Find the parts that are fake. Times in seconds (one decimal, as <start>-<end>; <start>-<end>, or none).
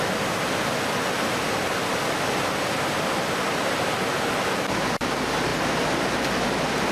none